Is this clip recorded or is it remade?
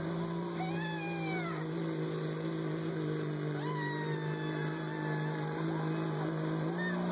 recorded